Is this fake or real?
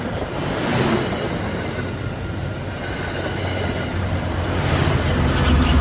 real